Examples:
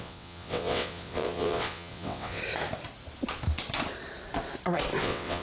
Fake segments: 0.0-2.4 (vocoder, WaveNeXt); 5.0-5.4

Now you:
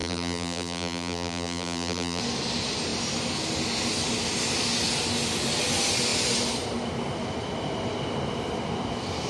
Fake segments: 0.0-2.2 (vocoder, BigVGAN v2)

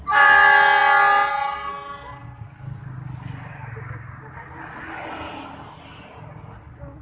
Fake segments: none

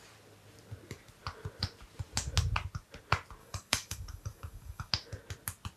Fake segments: 3.4-4.9 (codec, DAC)

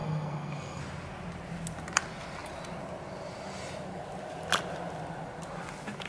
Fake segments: 0.0-0.8 (codec, SNAC)